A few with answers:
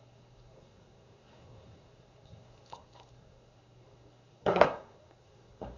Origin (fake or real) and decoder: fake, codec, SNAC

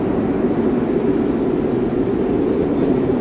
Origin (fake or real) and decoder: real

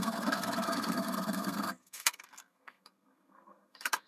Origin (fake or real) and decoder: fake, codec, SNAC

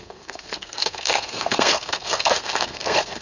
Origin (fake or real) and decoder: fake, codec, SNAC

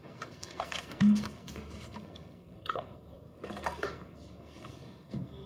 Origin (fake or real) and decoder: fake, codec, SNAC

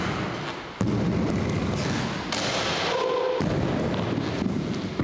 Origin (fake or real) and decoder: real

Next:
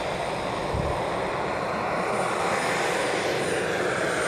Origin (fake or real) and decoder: real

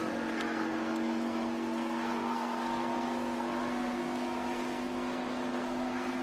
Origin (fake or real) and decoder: fake, codec, SNAC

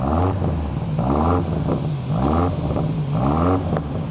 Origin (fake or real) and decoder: real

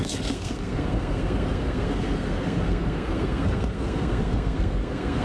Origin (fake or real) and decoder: fake, codec, SNAC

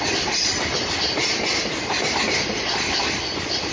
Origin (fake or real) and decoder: real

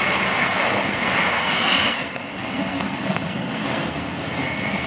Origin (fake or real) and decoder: fake, codec, SNAC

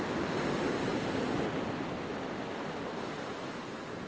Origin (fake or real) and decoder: real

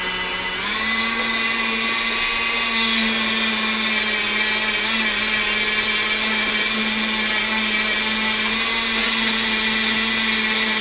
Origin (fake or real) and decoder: real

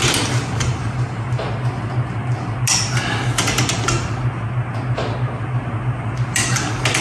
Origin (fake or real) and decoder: real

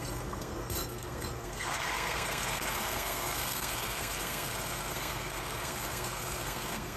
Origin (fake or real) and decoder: fake, codec, SNAC